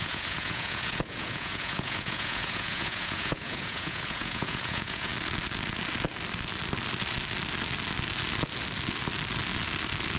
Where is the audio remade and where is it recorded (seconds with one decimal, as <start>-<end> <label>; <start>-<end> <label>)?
0.0-5.1 remade; 5.1-10.2 recorded